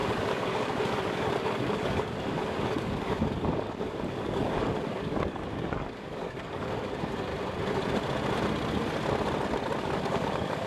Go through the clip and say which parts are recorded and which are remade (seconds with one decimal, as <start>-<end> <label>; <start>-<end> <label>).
0.0-7.3 remade; 7.3-9.8 recorded; 9.8-10.7 remade